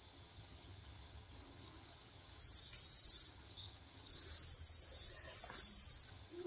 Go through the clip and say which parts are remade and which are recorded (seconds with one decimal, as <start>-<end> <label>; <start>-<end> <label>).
0.0-2.4 remade; 2.4-3.3 recorded; 3.3-4.1 remade; 4.1-6.1 recorded; 6.1-6.5 remade